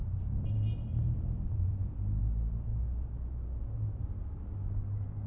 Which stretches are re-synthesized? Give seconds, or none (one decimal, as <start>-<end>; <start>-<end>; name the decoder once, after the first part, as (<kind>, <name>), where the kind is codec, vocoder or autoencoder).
0.0-0.5 (vocoder, BigVGAN v2); 0.9-2.2